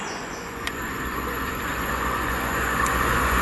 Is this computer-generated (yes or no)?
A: yes